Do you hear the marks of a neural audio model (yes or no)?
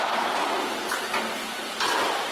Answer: no